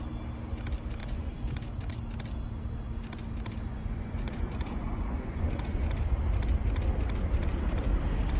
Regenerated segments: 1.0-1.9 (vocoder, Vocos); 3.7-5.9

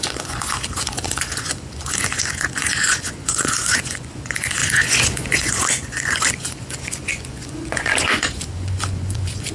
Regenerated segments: 0.0-9.5 (vocoder, Vocos)

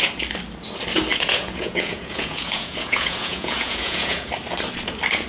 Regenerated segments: 1.1-4.3 (vocoder, Vocos)

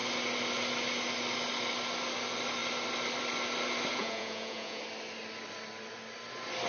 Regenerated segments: 3.9-4.8 (vocoder, Vocos)